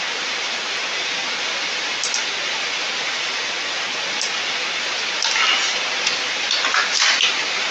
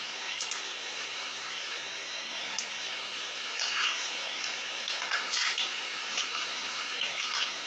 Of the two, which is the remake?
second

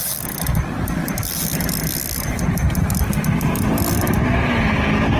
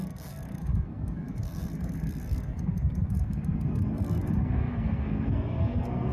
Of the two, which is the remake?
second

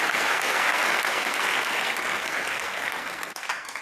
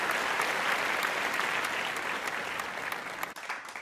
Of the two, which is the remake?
first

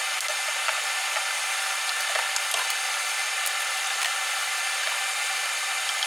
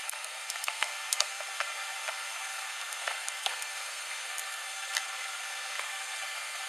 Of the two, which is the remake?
second